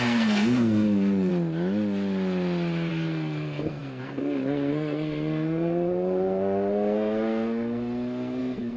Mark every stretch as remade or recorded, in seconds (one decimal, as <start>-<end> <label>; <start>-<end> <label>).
0.0-1.3 remade; 1.3-2.9 recorded; 2.9-8.8 remade